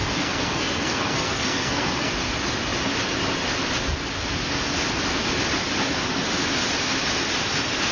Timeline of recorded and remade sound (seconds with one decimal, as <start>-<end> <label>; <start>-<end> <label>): 0.0-2.1 remade; 2.1-7.9 recorded